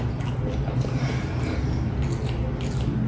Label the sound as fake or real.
real